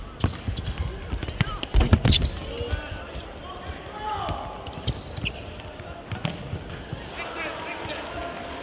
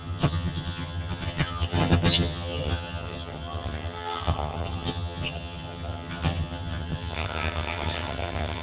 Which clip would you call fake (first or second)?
second